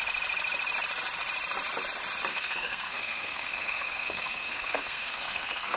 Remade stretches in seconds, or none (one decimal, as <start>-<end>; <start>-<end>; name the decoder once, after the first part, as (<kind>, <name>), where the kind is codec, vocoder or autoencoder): 2.3-5.8 (codec, SNAC)